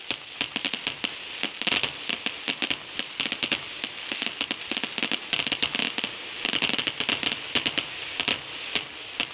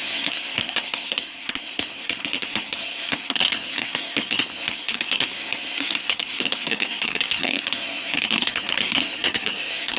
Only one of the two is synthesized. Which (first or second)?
second